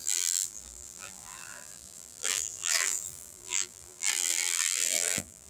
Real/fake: fake